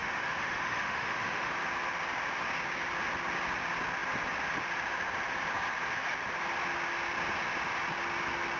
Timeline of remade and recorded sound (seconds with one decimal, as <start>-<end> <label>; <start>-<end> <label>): 0.0-1.5 remade; 1.5-8.6 recorded